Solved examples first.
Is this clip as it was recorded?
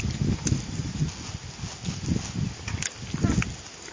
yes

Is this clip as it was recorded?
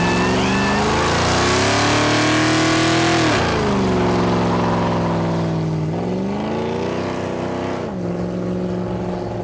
yes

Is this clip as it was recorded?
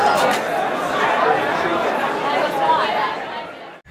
yes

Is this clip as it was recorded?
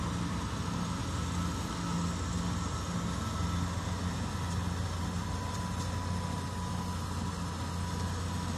yes